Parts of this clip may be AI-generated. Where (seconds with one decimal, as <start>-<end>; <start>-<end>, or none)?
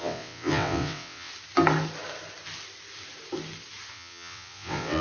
0.0-1.3; 3.9-5.0